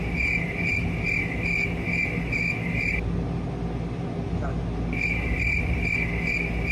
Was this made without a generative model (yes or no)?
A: yes